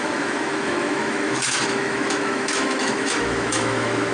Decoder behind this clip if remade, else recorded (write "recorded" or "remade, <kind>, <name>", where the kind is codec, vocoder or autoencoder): remade, autoencoder, DAC-VAE